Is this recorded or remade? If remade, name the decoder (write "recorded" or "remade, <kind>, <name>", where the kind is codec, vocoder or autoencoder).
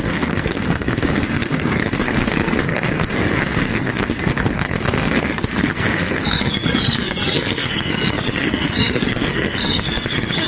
remade, codec, SNAC